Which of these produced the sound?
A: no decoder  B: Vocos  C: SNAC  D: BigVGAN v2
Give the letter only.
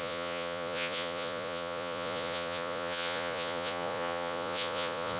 B